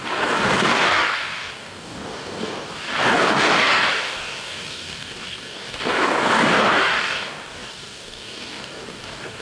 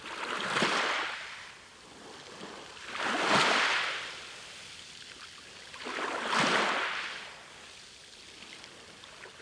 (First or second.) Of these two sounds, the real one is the second